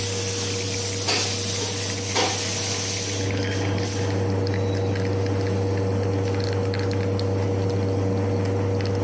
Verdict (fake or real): real